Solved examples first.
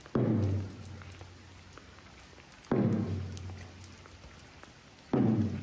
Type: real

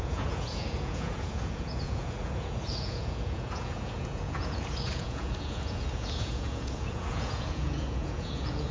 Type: fake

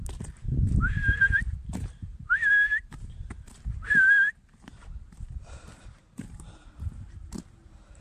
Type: fake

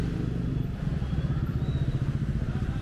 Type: fake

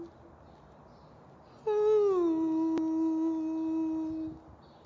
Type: real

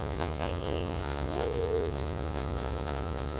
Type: fake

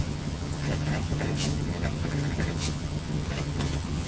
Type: fake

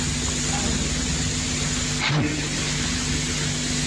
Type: real